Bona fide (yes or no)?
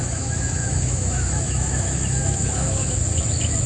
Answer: no